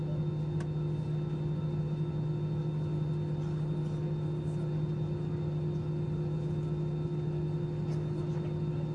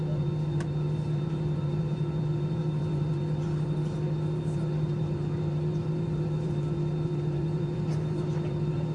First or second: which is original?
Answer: first